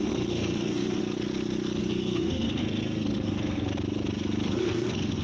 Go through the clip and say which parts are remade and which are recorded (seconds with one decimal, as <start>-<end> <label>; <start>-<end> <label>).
0.0-1.0 remade; 1.0-1.8 recorded; 1.8-3.7 remade; 3.7-4.5 recorded; 4.5-5.2 remade